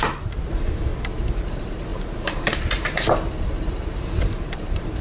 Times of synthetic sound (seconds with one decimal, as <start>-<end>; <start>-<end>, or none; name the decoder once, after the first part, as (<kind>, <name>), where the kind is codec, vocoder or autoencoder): 0.0-0.9 (vocoder, BigVGAN v2); 1.5-5.0